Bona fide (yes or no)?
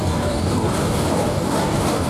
no